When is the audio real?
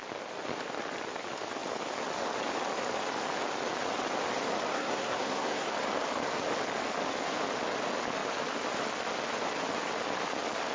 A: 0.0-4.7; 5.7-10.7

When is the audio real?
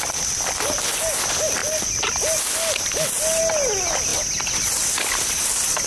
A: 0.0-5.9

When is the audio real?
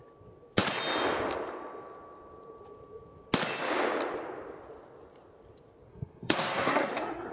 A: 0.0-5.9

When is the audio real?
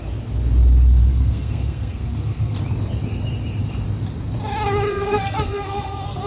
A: 0.0-1.0; 2.6-4.9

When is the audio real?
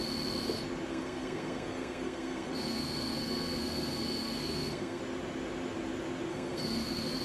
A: 0.0-0.9; 5.0-6.3